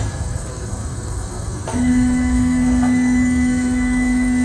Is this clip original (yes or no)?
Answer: no